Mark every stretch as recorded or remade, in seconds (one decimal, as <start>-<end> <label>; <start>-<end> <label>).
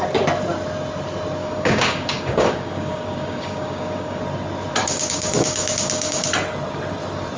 0.0-1.4 recorded; 1.4-4.2 remade; 4.2-4.8 recorded; 4.8-6.3 remade; 6.3-7.4 recorded